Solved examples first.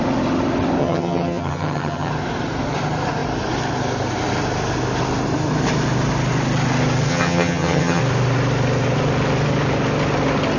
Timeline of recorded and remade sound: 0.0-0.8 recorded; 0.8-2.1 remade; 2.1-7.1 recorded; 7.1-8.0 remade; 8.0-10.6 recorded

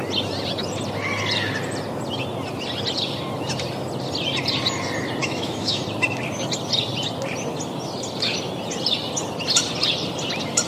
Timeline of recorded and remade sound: 0.0-5.2 recorded; 5.2-5.8 remade; 5.8-10.7 recorded

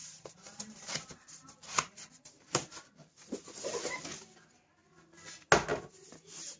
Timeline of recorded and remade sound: 0.0-4.0 remade; 4.0-5.7 recorded; 5.7-6.6 remade